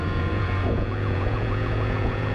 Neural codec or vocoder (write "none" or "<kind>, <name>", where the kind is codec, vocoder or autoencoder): vocoder, Vocos